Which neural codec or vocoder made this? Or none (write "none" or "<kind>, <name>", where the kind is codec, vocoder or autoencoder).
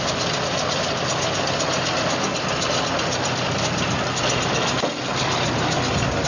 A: none